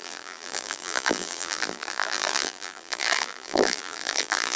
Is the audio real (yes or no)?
no